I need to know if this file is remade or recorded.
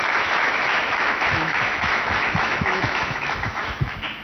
remade